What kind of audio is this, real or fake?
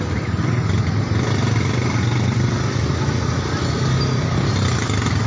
real